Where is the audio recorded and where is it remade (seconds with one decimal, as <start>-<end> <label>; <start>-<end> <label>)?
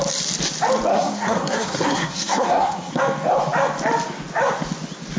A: 0.0-0.9 recorded; 0.9-3.0 remade; 3.0-5.2 recorded